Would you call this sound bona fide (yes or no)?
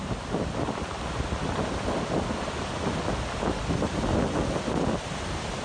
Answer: yes